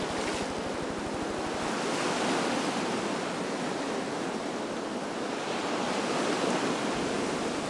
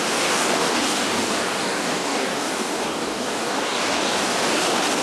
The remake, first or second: second